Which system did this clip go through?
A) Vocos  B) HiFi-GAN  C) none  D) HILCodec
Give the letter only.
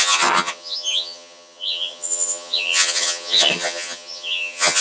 B